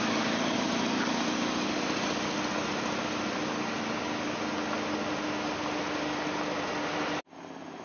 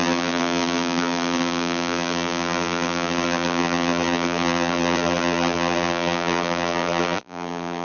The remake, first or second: second